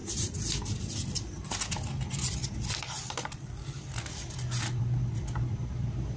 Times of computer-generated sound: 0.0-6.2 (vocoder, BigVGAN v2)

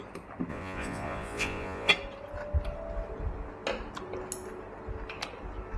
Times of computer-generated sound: 0.5-1.9 (vocoder, Vocos)

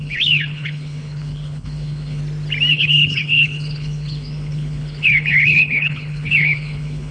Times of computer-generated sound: 0.0-2.2 (codec, HILCodec); 2.7-7.1

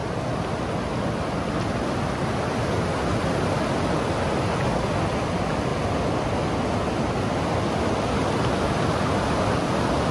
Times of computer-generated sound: none

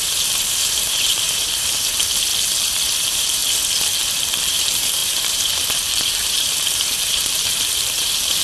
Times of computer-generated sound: 0.0-2.3 (vocoder, BigVGAN v2); 3.0-3.4; 4.4-8.4